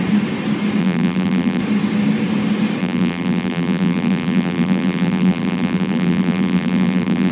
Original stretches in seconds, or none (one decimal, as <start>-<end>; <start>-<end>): 0.0-0.8; 1.6-2.8